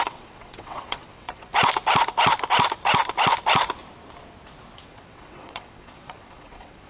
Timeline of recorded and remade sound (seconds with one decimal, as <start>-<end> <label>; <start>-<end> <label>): 0.0-1.5 remade; 1.5-4.8 recorded; 4.8-6.9 remade